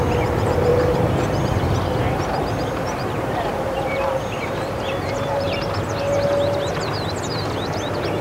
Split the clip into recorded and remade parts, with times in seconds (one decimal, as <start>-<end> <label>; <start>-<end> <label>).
0.0-0.7 recorded; 0.7-5.6 remade; 5.6-8.2 recorded